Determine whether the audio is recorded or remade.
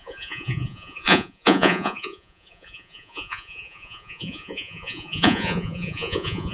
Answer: remade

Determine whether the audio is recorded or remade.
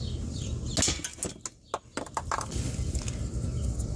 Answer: recorded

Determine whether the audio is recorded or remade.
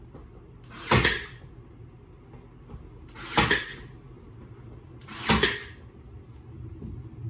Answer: recorded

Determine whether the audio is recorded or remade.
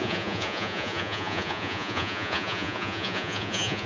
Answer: remade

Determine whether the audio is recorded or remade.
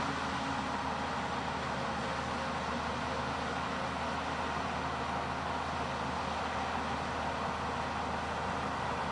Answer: recorded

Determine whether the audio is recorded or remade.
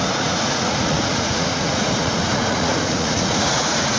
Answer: remade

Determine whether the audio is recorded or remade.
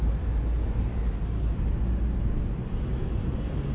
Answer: recorded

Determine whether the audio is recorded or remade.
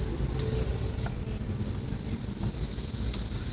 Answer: recorded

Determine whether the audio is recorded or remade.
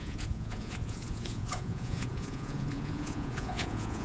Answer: remade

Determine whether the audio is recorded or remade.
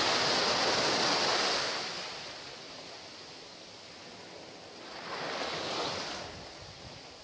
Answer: recorded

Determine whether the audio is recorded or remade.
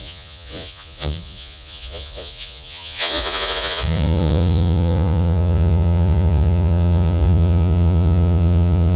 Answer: remade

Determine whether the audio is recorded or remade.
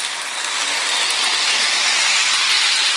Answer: recorded